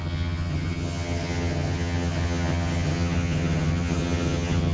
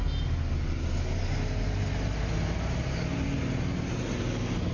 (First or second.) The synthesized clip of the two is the first